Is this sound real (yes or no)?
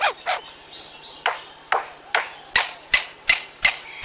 yes